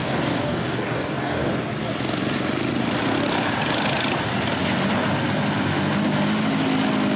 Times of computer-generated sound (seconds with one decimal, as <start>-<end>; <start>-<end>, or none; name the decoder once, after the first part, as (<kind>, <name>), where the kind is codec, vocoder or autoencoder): 0.0-1.5 (codec, DAC)